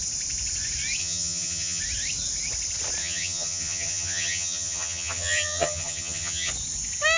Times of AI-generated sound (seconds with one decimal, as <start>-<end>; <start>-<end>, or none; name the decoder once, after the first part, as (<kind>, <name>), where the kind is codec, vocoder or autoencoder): 1.0-1.8 (vocoder, HiFi-GAN); 3.0-6.5